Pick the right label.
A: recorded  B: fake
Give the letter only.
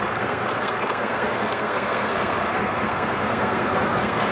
B